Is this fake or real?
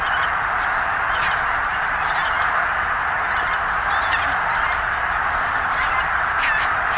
real